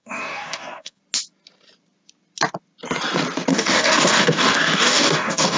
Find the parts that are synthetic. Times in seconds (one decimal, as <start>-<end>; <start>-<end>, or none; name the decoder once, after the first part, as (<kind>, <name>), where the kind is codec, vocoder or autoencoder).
0.0-1.0 (codec, DAC); 3.5-5.6